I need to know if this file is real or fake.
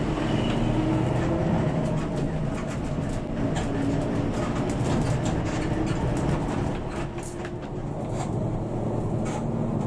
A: real